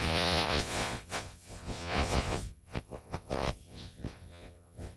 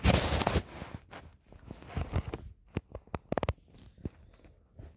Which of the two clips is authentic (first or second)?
second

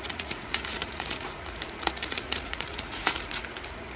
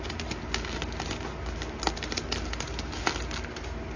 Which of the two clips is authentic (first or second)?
second